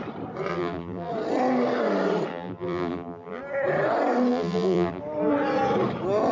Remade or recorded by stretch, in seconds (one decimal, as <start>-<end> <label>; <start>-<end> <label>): 0.0-0.5 recorded; 0.5-1.1 remade; 1.1-2.3 recorded; 2.3-3.4 remade; 3.4-4.3 recorded; 4.3-5.0 remade; 5.0-6.3 recorded